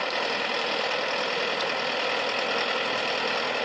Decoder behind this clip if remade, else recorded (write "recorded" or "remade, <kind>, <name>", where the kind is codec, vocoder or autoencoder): recorded